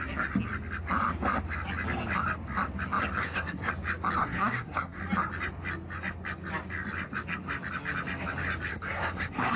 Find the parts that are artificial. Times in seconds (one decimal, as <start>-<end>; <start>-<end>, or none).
3.2-3.7; 4.2-5.0; 8.7-9.6